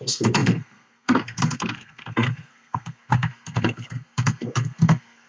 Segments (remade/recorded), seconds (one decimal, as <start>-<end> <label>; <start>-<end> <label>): 0.0-5.3 remade